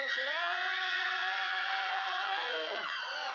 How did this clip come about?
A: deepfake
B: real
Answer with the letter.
A